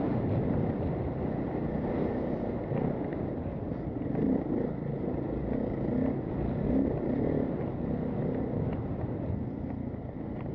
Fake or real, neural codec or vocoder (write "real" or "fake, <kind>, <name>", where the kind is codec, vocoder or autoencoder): real